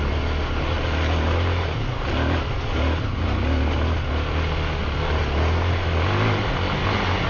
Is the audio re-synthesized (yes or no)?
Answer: no